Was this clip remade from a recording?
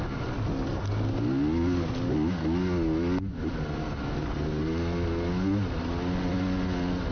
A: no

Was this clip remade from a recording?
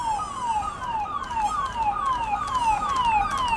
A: no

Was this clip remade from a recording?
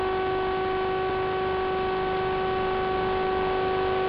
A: no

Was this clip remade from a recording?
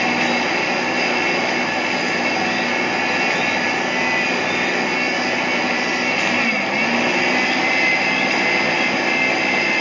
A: no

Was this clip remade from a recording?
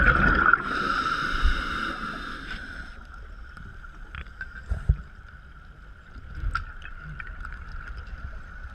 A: no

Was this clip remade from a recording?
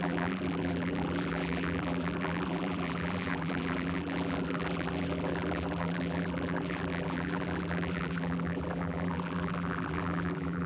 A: yes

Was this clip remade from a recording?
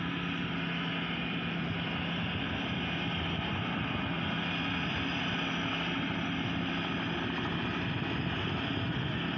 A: no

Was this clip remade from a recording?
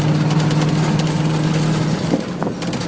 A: no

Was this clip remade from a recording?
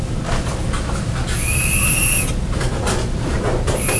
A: no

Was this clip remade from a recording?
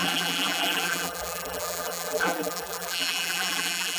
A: yes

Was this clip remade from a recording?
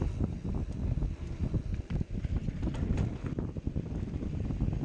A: no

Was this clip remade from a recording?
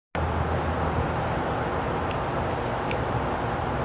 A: no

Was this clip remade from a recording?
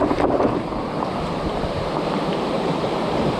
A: yes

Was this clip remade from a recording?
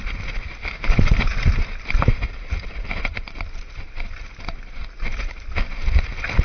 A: no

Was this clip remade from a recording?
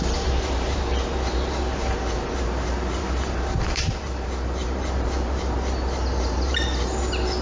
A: yes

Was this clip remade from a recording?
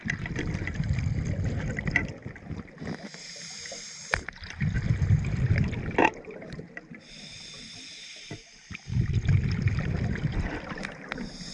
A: yes